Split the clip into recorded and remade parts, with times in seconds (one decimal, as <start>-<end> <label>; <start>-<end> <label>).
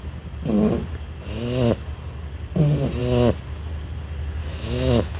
0.0-4.4 recorded; 4.4-5.2 remade